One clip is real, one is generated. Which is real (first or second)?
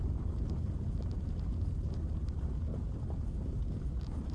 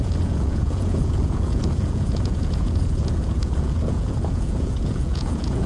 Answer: first